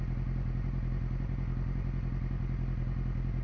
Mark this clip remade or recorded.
recorded